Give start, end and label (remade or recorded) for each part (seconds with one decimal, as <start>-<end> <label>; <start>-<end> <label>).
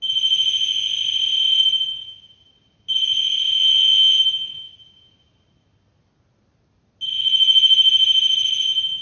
0.0-3.6 recorded; 3.6-4.2 remade; 4.2-9.0 recorded